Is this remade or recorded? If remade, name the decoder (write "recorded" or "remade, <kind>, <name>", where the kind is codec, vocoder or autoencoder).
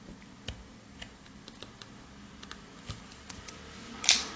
recorded